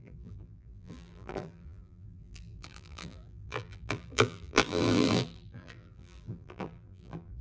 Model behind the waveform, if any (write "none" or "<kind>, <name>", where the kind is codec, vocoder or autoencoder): vocoder, BigVGAN v2